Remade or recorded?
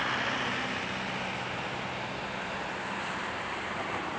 recorded